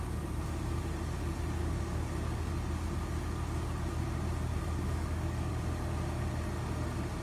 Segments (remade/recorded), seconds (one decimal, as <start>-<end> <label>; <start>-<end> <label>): 0.0-1.6 recorded; 1.6-2.5 remade; 2.5-4.6 recorded; 4.6-5.5 remade; 5.5-7.2 recorded

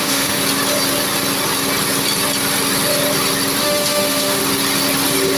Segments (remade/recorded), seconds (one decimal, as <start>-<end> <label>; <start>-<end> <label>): 0.0-0.4 remade; 0.4-3.6 recorded; 3.6-4.4 remade; 4.4-5.4 recorded

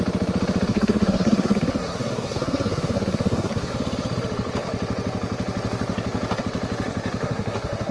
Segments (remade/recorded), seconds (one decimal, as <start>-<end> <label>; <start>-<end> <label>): 0.0-0.7 recorded; 0.7-3.7 remade; 3.7-7.2 recorded; 7.2-7.9 remade

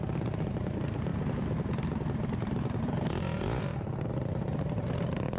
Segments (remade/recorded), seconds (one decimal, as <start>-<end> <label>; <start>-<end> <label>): 0.0-5.4 recorded

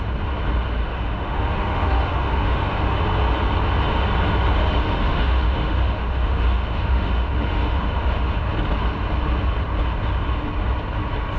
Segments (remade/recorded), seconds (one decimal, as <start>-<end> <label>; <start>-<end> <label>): 0.0-0.8 recorded; 0.8-3.0 remade; 3.0-4.6 recorded; 4.6-8.4 remade; 8.4-11.4 recorded

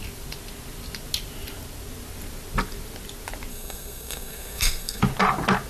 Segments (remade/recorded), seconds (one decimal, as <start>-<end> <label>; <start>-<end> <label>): 0.0-3.5 recorded; 3.5-5.0 remade; 5.0-5.7 recorded